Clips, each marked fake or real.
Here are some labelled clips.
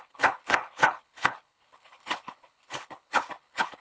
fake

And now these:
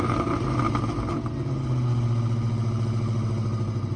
real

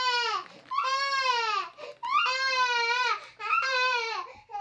real